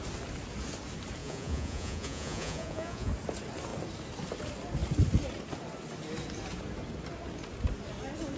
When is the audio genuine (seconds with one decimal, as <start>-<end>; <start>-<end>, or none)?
0.0-1.2; 3.1-8.4